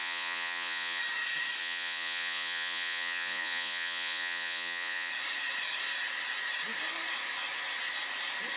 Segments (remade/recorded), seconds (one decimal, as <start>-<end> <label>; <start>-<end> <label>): 0.0-1.0 remade; 1.0-1.6 recorded; 1.6-5.1 remade; 5.1-8.6 recorded